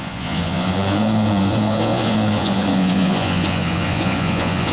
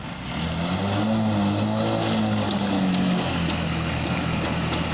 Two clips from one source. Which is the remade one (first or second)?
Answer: first